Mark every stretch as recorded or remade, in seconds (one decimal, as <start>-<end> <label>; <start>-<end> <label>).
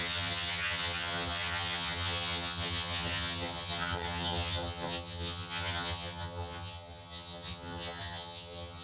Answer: 0.0-8.8 remade